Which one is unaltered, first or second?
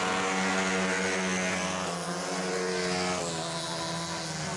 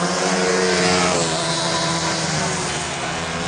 first